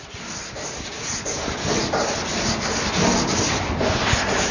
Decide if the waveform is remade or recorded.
recorded